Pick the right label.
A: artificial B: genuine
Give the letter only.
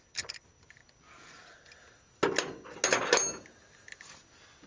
B